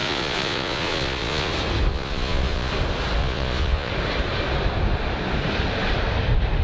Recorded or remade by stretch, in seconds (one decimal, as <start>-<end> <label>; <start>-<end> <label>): 0.0-1.5 remade; 1.5-1.9 recorded; 1.9-2.7 remade; 2.7-3.2 recorded; 3.2-3.9 remade; 3.9-6.6 recorded